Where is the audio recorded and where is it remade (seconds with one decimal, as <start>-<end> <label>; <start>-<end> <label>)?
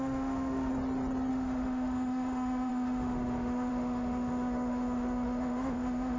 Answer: 0.0-0.7 remade; 0.7-1.3 recorded; 1.3-6.2 remade